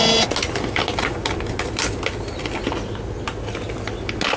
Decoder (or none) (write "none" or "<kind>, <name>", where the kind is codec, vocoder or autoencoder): none